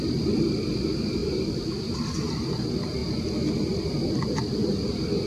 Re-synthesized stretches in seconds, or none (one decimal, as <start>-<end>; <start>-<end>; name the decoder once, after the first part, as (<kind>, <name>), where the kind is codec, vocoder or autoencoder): 1.2-1.9 (vocoder, BigVGAN v2)